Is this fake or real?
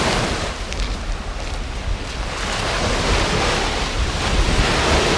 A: real